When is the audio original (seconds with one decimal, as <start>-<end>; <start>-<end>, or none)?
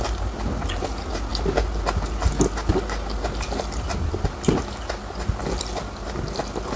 0.0-6.8